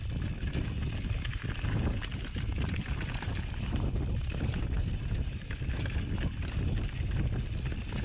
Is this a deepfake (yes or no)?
no